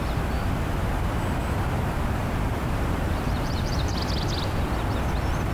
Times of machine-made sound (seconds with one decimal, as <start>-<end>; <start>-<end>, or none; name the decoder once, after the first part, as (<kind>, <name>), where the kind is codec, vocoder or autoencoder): 0.4-1.8 (vocoder, BigVGAN v2); 2.2-3.9